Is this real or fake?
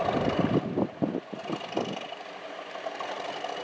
real